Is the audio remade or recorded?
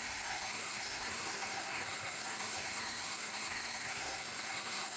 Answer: remade